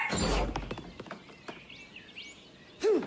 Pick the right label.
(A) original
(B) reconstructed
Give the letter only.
A